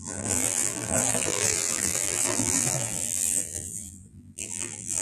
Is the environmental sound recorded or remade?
remade